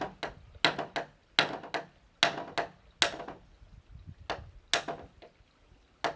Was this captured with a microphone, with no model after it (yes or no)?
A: yes